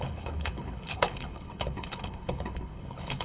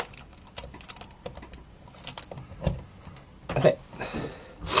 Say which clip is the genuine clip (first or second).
second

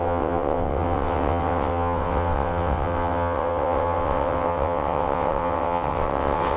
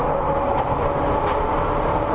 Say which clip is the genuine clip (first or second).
second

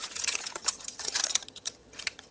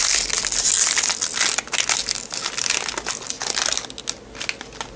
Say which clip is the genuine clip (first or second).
second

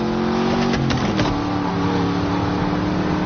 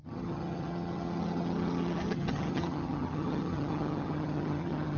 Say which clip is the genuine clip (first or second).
first